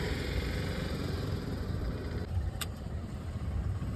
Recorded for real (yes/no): no